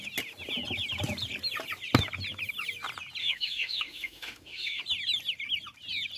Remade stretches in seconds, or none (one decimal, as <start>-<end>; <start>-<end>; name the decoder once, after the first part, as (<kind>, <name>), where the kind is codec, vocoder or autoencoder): 3.2-4.8 (autoencoder, DAC-VAE)